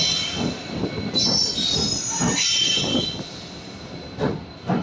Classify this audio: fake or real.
real